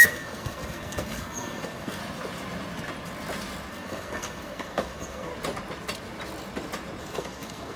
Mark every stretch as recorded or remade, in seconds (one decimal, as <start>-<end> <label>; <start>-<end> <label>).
0.0-2.0 remade; 2.0-3.7 recorded; 3.7-5.3 remade; 5.3-7.0 recorded; 7.0-7.8 remade